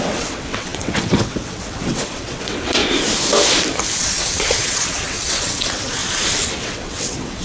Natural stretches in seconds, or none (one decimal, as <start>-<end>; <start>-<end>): 2.8-4.0; 6.0-6.6